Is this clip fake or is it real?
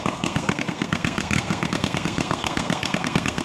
fake